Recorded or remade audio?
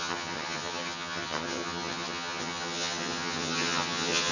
remade